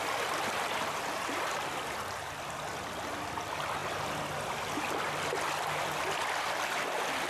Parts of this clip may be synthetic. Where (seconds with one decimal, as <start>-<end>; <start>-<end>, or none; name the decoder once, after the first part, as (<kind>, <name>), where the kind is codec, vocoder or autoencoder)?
none